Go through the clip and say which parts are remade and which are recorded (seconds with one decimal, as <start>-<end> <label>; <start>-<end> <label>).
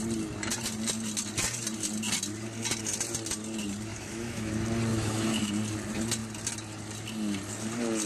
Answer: 0.0-3.9 recorded; 3.9-4.5 remade; 4.5-4.9 recorded; 4.9-5.5 remade; 5.5-8.1 recorded